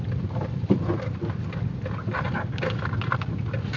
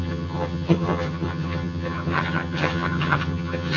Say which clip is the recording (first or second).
first